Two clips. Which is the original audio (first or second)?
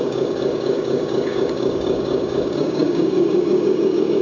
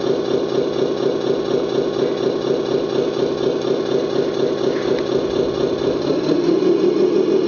second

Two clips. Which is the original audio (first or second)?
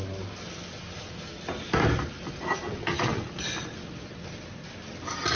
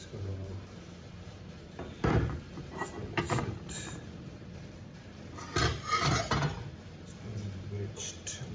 first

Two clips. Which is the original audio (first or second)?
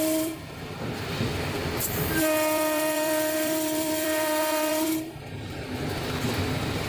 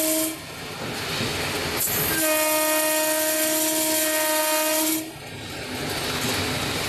second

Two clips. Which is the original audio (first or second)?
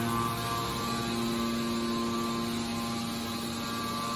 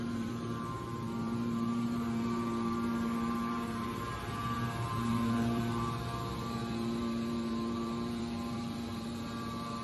first